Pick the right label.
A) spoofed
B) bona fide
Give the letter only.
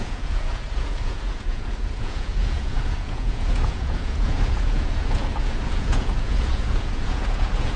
A